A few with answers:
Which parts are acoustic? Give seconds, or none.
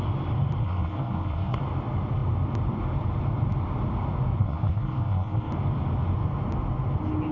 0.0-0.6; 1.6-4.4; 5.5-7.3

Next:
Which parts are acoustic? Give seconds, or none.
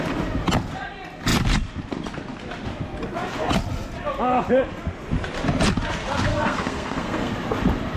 0.0-6.3; 7.3-8.0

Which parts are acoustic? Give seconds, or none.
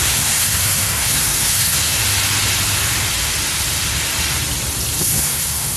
2.0-5.0